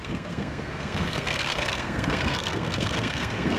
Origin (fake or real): fake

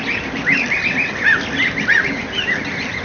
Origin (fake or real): real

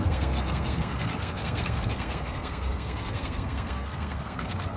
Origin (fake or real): fake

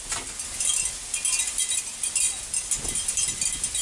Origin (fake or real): real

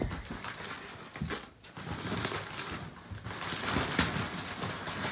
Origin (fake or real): real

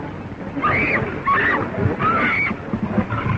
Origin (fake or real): real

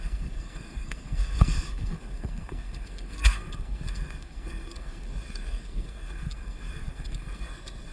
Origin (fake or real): fake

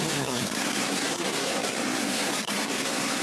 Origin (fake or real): fake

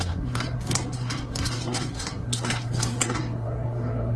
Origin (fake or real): fake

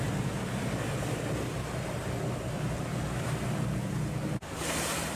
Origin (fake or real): real